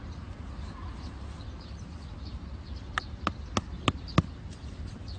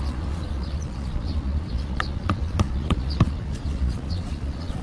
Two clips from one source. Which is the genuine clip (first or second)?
first